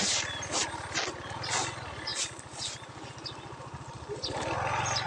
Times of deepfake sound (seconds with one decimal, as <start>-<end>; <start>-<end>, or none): 0.0-0.8